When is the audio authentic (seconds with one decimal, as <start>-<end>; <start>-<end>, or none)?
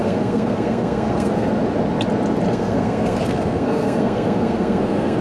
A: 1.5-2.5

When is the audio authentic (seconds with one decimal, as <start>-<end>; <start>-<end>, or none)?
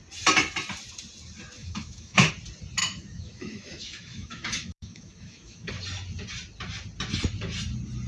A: 0.0-1.6; 2.3-2.8; 5.7-8.1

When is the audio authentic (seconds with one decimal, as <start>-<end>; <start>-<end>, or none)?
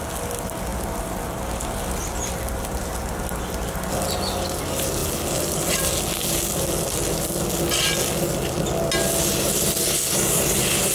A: 0.0-10.9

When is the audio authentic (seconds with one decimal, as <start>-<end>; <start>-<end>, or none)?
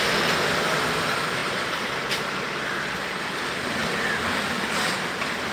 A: 0.0-1.4; 2.5-5.5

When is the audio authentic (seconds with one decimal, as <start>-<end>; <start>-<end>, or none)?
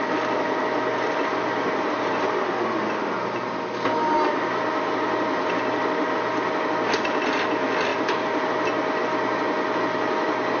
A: 0.0-7.9; 8.4-10.6